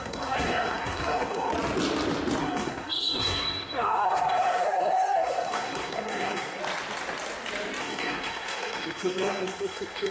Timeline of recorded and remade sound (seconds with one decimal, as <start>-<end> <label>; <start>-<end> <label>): 0.0-1.5 remade; 1.5-2.4 recorded; 2.4-6.6 remade; 6.6-7.8 recorded; 7.8-10.1 remade